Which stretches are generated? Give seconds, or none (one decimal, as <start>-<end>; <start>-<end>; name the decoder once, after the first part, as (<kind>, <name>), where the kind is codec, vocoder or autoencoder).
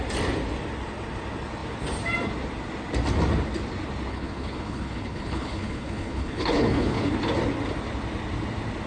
4.1-7.1 (codec, HILCodec)